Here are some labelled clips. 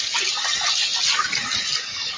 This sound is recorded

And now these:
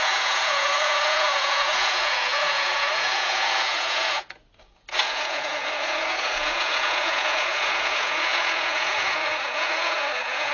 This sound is remade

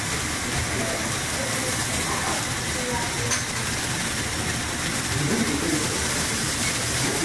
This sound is recorded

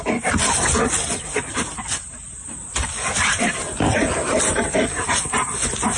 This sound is recorded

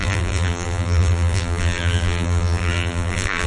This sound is remade